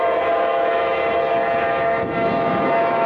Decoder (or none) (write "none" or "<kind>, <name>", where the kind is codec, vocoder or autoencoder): none